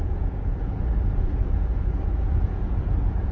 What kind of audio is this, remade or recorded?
remade